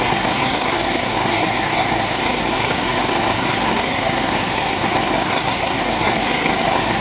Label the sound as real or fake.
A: fake